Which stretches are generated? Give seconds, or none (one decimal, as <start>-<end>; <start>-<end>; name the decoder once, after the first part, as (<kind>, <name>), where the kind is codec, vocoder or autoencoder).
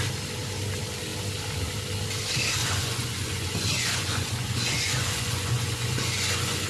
2.6-6.7 (vocoder, Vocos)